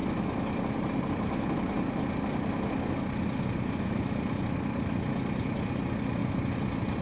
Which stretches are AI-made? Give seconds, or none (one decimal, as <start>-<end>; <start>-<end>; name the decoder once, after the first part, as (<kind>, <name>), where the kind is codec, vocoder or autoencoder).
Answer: none